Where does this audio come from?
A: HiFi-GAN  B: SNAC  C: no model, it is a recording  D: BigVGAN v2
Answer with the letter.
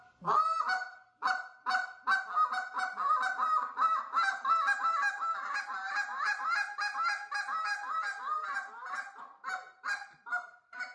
C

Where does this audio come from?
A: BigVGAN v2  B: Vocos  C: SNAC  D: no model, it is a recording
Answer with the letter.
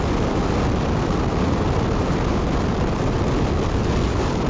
A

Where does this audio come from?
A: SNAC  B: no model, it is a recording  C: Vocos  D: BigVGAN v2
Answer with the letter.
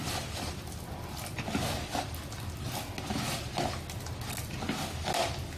B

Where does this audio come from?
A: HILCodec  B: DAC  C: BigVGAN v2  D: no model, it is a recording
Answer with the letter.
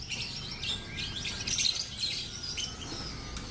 D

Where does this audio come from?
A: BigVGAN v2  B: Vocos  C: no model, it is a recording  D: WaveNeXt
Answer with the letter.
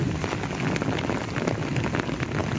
C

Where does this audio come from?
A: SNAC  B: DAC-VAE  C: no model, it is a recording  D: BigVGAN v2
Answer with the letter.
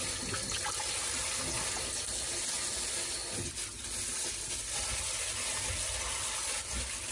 C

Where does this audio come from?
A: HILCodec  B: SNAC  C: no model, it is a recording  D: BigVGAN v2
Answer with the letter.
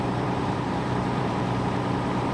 D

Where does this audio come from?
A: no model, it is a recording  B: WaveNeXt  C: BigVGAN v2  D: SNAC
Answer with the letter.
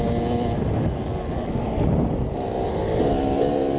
A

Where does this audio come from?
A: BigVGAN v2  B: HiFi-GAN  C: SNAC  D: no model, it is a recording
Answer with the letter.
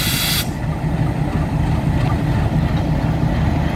D